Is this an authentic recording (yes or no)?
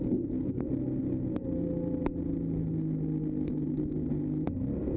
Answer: yes